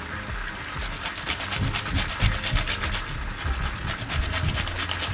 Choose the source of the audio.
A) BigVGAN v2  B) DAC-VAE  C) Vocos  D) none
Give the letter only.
D